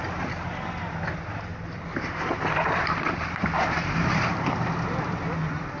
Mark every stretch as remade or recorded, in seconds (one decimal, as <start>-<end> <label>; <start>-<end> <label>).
0.0-1.5 recorded; 1.5-5.0 remade; 5.0-5.8 recorded